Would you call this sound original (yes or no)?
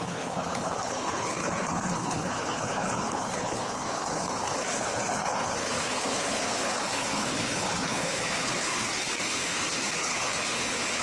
no